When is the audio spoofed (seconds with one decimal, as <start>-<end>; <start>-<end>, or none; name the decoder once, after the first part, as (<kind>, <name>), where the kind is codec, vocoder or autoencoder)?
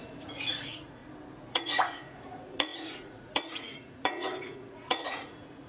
0.0-1.0 (vocoder, Vocos); 1.5-5.7